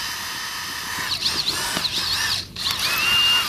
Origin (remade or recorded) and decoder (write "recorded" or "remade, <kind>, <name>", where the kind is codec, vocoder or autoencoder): recorded